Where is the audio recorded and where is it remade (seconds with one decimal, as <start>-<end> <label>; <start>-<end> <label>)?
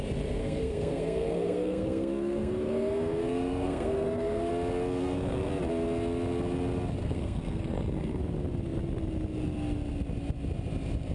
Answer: 0.0-0.4 recorded; 0.4-4.5 remade; 4.5-5.0 recorded; 5.0-5.5 remade; 5.5-7.0 recorded; 7.0-8.2 remade; 8.2-11.1 recorded